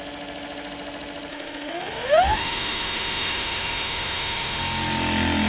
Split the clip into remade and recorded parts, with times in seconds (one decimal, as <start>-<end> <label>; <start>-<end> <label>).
0.0-1.3 recorded; 1.3-4.6 remade; 4.6-5.5 recorded